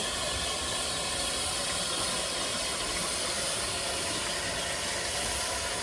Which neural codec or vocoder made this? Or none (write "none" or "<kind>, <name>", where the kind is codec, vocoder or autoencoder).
none